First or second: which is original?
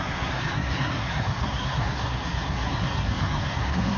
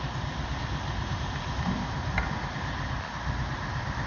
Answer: second